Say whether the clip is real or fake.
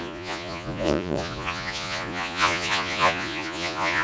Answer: fake